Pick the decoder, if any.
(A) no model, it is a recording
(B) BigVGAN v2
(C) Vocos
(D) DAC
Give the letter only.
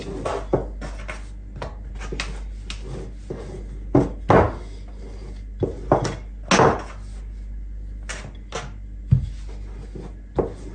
A